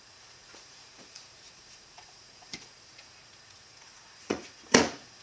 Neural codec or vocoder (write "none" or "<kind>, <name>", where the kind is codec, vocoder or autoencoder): vocoder, Vocos